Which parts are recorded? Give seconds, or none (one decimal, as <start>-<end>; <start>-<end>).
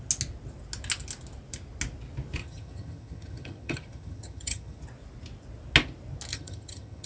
0.0-2.4; 4.8-6.3